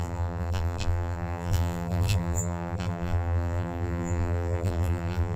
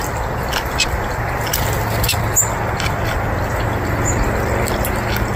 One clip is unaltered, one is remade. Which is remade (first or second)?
first